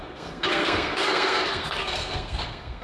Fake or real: fake